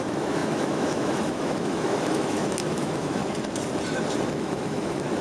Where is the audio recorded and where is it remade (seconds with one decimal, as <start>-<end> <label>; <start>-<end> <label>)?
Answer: 0.0-3.2 remade; 3.2-4.4 recorded; 4.4-5.2 remade